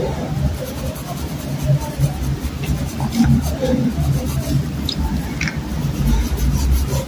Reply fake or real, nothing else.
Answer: real